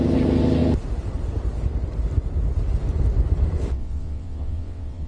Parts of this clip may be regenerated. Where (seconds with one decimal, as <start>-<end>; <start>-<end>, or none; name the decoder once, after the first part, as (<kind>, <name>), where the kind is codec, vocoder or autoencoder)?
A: 3.7-5.1 (vocoder, WaveNeXt)

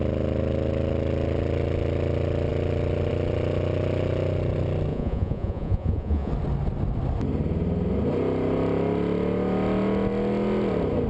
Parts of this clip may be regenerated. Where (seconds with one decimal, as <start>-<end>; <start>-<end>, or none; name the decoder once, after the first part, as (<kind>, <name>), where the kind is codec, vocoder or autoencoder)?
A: 4.9-6.3 (vocoder, Vocos)

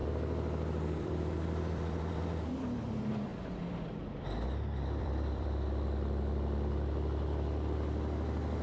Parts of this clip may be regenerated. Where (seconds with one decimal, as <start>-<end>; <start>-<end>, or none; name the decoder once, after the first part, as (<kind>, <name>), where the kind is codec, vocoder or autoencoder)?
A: 0.0-3.3 (vocoder, BigVGAN v2); 5.0-8.6

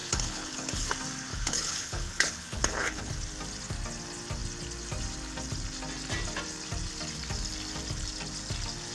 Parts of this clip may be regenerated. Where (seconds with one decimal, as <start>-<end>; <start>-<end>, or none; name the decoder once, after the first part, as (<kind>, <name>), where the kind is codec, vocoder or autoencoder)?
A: 0.0-0.9 (codec, HILCodec); 1.3-3.1

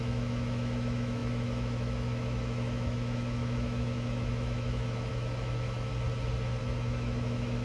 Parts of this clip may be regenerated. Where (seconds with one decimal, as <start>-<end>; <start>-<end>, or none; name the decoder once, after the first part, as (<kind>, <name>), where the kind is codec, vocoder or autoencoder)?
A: 0.0-5.9 (autoencoder, DAC-VAE); 6.6-7.6